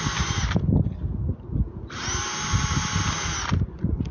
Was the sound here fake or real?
real